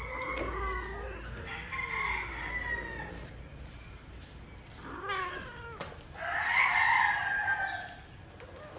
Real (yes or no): yes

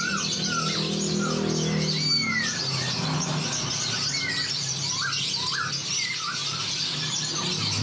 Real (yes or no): yes